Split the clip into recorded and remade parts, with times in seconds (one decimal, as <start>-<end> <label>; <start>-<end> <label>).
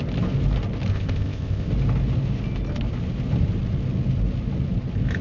0.0-0.9 recorded; 0.9-1.7 remade; 1.7-5.2 recorded